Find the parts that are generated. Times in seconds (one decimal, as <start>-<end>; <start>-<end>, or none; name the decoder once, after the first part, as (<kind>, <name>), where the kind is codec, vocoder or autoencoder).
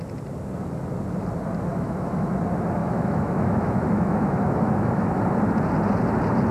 1.7-2.3 (autoencoder, DAC-VAE); 2.8-5.2